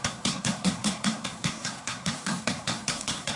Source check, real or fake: fake